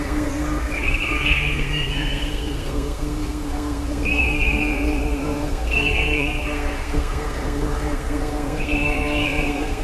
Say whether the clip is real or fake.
fake